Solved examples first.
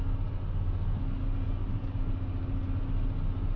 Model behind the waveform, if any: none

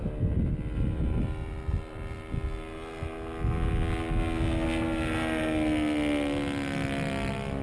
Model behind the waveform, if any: none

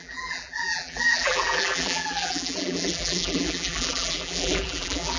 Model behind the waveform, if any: vocoder, BigVGAN v2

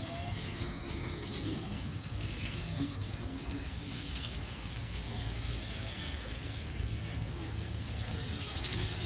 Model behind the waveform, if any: codec, SNAC